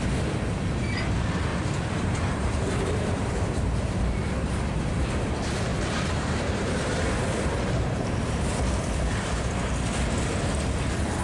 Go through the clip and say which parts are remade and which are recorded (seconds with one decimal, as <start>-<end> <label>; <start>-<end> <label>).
0.0-1.5 recorded; 1.5-4.8 remade; 4.8-5.7 recorded; 5.7-8.4 remade; 8.4-11.2 recorded